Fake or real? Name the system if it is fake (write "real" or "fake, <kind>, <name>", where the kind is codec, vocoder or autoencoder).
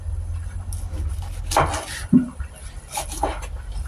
real